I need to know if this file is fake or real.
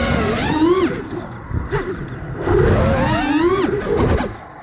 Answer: real